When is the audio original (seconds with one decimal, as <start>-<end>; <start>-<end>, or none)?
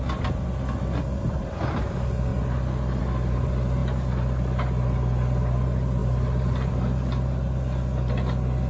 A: 0.0-8.7